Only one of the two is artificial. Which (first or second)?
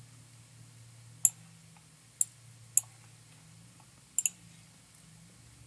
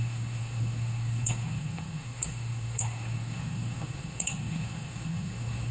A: second